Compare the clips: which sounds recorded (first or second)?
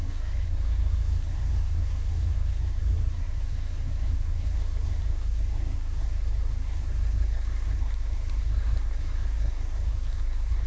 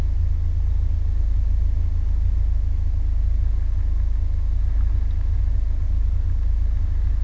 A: second